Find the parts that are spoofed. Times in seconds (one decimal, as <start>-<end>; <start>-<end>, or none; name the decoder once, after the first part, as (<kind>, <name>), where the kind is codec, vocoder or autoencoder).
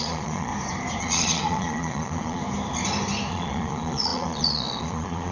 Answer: 0.0-0.5 (vocoder, Vocos); 1.0-2.4; 3.3-5.3